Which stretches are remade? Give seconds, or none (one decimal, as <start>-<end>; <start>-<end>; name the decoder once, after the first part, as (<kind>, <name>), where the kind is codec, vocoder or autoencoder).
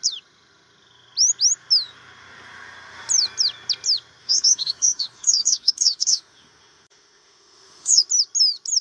4.2-8.0 (autoencoder, DAC-VAE)